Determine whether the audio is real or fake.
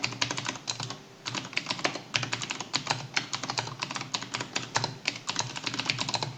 real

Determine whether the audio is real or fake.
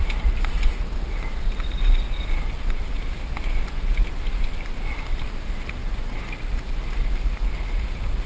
real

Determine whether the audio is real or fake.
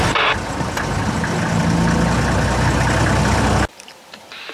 real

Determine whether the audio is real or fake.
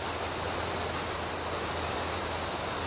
real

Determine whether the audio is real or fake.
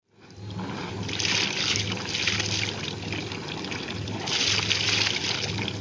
real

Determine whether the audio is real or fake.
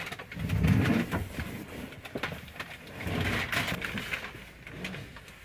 real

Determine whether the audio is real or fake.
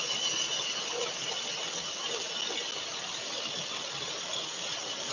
real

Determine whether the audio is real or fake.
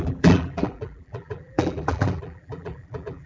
fake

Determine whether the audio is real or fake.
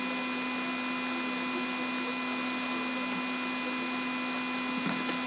real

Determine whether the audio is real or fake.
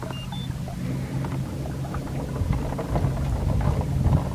real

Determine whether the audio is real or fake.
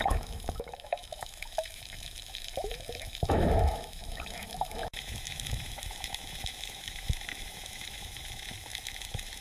fake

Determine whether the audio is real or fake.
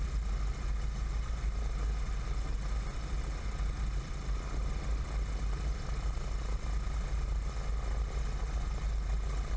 real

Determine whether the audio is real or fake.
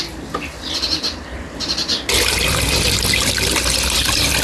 fake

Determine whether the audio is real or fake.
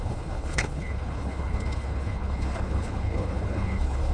fake